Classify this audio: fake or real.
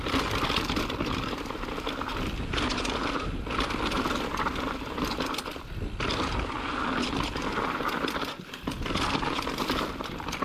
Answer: real